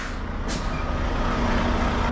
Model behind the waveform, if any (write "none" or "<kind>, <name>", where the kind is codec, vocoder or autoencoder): none